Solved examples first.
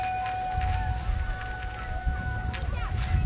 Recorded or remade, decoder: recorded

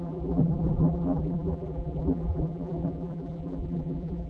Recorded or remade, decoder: remade, vocoder, BigVGAN v2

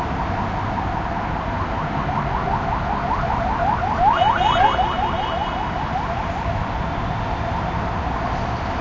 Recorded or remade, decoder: recorded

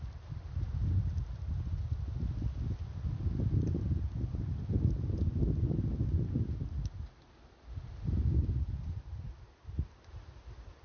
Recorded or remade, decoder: recorded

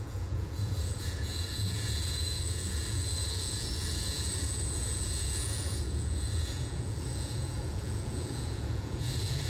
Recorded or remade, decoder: remade, vocoder, Vocos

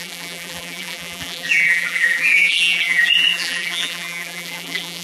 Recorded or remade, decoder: remade, vocoder, BigVGAN v2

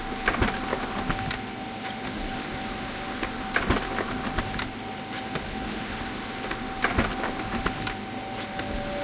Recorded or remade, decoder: recorded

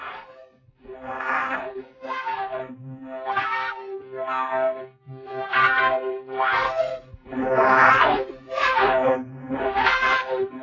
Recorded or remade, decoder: remade, codec, SNAC